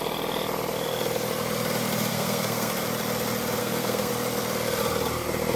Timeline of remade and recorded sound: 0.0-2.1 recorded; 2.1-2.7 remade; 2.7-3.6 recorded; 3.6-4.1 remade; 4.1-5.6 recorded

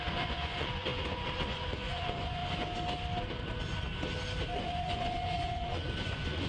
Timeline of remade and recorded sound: 0.0-2.4 remade; 2.4-4.6 recorded; 4.6-6.5 remade

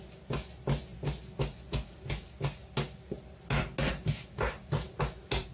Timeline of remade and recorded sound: 0.0-5.5 recorded

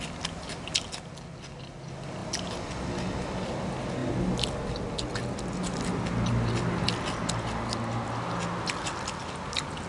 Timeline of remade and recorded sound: 0.0-9.9 recorded

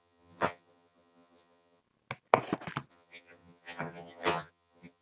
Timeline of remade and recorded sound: 0.0-1.8 remade; 1.8-2.9 recorded; 2.9-5.0 remade

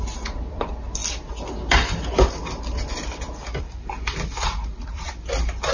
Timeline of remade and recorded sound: 0.0-4.4 recorded; 4.4-5.1 remade; 5.1-5.7 recorded

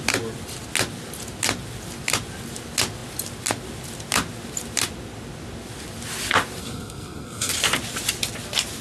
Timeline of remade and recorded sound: 0.0-6.6 recorded; 6.6-7.5 remade; 7.5-8.8 recorded